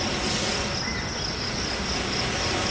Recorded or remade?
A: recorded